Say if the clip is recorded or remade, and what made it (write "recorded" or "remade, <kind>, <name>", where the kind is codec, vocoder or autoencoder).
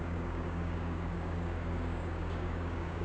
remade, codec, DAC